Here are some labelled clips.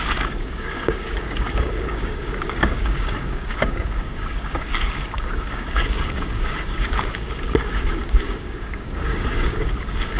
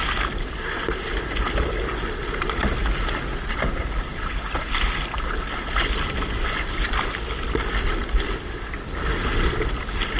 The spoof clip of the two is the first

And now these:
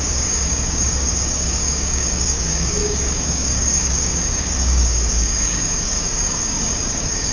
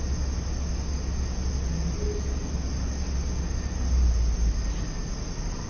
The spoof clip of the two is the first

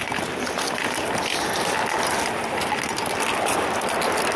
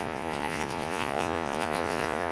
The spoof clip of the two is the second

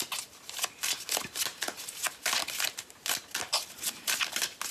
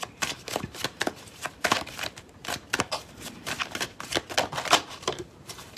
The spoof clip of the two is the second